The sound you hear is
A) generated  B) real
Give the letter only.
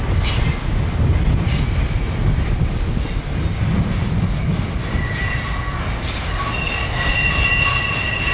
B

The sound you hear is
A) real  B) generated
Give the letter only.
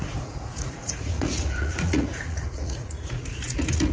B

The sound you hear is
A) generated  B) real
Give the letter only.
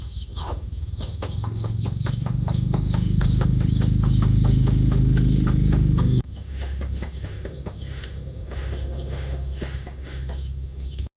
A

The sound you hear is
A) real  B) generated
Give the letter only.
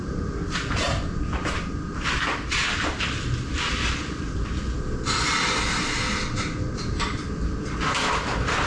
A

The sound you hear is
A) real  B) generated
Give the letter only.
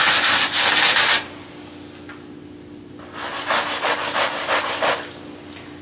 A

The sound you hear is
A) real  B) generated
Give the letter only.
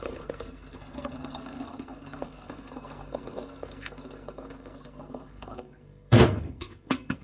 B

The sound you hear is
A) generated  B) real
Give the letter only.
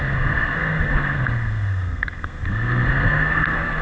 A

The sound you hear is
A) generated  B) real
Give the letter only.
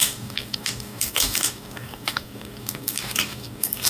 A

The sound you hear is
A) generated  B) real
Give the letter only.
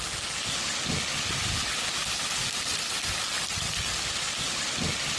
B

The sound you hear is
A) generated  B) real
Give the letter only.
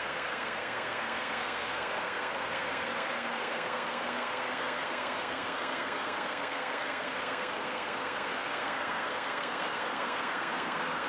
A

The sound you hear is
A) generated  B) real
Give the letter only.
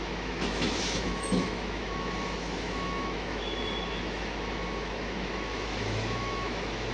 A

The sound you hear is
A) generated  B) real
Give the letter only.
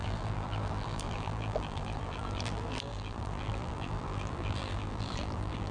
A